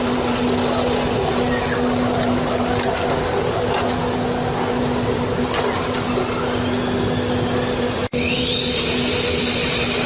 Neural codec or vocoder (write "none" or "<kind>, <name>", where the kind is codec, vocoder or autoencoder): none